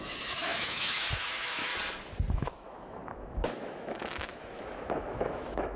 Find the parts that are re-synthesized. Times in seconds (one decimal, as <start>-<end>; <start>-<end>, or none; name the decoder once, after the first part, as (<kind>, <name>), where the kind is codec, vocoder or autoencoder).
0.0-1.7 (autoencoder, DAC-VAE); 2.3-5.8